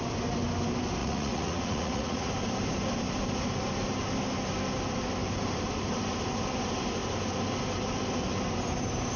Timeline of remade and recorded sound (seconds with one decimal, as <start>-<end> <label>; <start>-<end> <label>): 0.0-1.0 recorded; 1.0-2.3 remade; 2.3-9.2 recorded